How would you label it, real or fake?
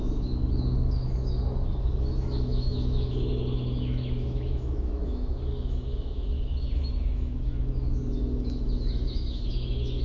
fake